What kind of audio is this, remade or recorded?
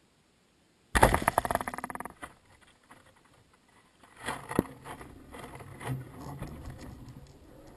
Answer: recorded